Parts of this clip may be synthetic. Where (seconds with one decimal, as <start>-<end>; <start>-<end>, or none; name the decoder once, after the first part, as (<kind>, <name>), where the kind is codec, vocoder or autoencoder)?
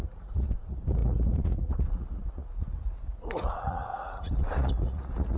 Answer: 0.0-5.4 (vocoder, Vocos)